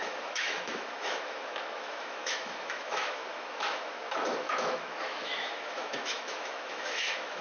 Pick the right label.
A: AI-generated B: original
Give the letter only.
A